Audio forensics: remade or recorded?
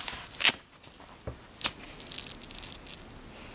recorded